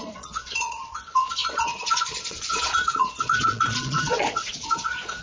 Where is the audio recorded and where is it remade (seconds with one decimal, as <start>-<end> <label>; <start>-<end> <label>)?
0.0-5.2 remade